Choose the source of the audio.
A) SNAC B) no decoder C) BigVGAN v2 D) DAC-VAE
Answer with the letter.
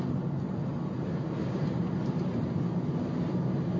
B